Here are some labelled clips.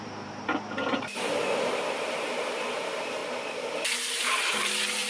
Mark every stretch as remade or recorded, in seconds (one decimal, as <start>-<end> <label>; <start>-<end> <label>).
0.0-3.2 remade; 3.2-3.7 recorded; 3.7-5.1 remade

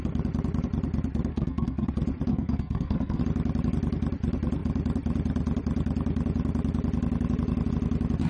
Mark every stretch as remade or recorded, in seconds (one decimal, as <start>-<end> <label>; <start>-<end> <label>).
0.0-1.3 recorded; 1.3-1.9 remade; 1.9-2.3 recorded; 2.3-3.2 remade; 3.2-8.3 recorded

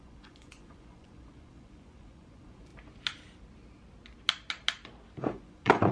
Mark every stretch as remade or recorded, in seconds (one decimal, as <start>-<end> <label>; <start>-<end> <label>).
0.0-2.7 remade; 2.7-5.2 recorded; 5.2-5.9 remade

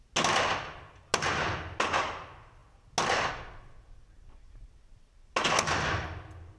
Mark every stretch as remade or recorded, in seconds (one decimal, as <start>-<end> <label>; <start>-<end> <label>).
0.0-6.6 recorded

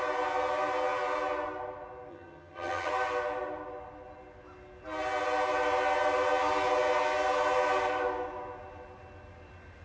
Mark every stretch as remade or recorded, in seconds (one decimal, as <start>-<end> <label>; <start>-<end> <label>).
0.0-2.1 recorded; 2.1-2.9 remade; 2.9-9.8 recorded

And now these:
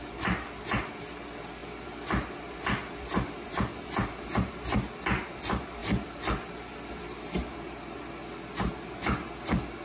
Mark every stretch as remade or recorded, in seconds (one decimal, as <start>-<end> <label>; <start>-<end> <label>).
0.0-9.8 recorded

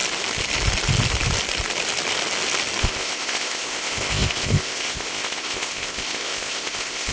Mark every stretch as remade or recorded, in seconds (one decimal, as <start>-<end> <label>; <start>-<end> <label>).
0.0-2.8 recorded; 2.8-7.1 remade

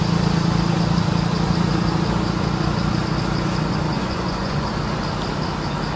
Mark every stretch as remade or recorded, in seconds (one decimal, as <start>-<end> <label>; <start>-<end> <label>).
0.0-3.9 recorded; 3.9-4.7 remade; 4.7-6.0 recorded